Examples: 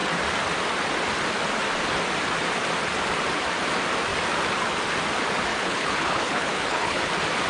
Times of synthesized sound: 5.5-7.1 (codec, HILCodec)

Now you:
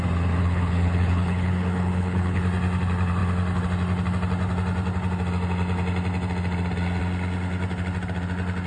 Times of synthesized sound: 0.4-2.4 (codec, HILCodec)

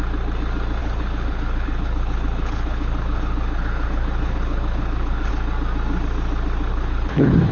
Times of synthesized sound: 0.8-5.3 (codec, HILCodec); 6.7-7.5

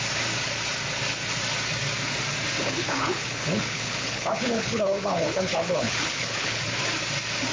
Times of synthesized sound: 2.6-6.6 (codec, HILCodec)

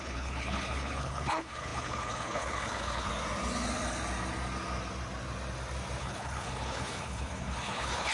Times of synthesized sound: 0.0-3.1 (codec, HILCodec); 6.0-8.1

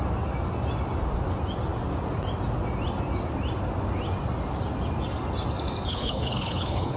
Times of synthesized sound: 5.9-7.0 (codec, HILCodec)

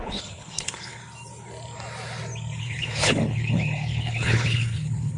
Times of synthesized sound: 0.0-1.0 (codec, HILCodec); 2.6-5.2